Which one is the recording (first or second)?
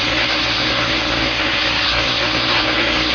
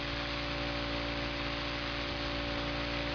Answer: second